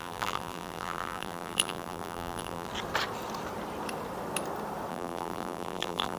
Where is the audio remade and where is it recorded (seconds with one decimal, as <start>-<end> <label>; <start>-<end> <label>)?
0.0-2.7 remade; 2.7-4.9 recorded; 4.9-6.2 remade